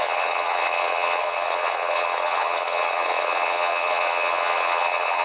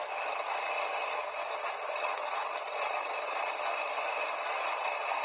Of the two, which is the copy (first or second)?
first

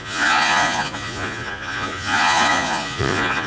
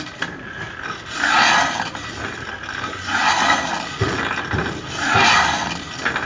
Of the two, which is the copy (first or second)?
first